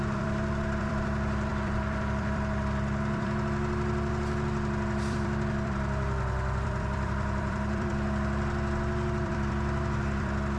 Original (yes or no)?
no